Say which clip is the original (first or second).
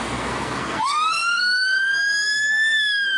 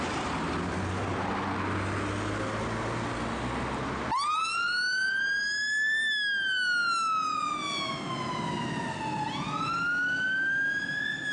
second